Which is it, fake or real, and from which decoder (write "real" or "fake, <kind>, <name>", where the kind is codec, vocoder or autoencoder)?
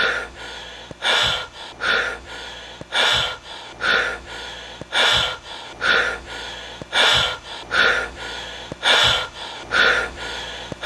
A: real